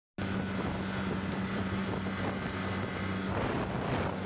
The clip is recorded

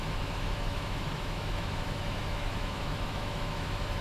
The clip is remade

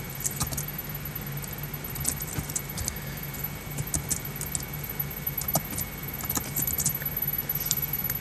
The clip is recorded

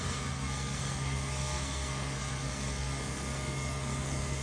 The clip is remade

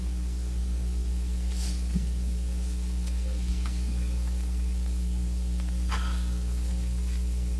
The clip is remade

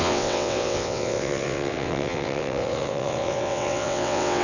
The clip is remade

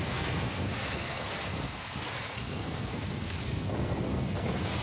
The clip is remade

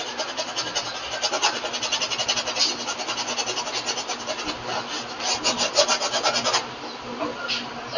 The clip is recorded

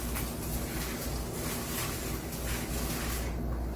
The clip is recorded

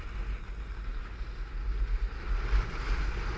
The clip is recorded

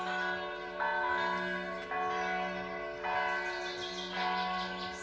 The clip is recorded